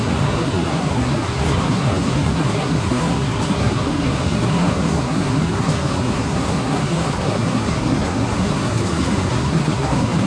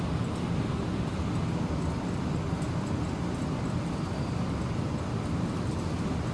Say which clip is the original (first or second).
second